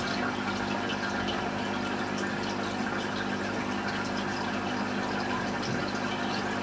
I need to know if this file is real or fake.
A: real